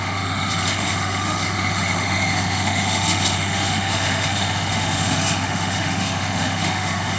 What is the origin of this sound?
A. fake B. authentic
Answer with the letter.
A